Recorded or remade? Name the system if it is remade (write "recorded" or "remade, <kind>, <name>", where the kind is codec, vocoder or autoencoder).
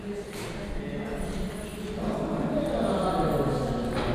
recorded